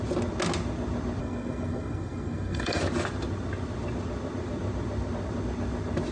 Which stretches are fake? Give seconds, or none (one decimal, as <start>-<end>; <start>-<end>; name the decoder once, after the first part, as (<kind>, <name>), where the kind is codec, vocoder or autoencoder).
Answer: 1.2-2.8 (codec, SNAC)